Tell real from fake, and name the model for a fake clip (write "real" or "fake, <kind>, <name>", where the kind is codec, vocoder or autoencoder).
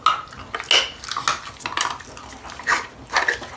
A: real